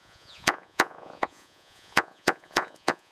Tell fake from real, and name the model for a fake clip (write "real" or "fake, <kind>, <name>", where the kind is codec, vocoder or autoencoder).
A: fake, vocoder, Vocos